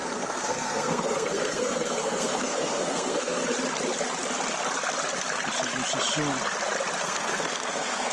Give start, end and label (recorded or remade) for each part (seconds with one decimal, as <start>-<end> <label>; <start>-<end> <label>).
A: 0.0-3.4 remade; 3.4-7.0 recorded; 7.0-8.1 remade